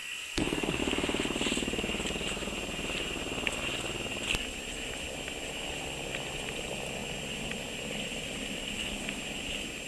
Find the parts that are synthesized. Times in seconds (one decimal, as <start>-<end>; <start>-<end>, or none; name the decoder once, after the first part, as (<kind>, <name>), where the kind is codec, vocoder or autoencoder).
0.0-0.8 (codec, SNAC)